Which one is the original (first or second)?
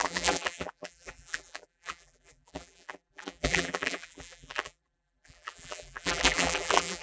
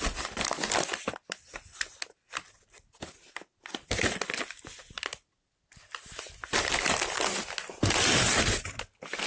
second